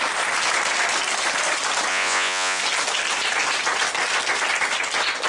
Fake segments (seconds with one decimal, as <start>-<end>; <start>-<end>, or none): 1.9-2.6